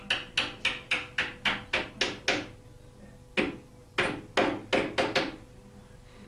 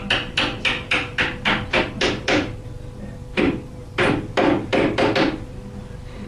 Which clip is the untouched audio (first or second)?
first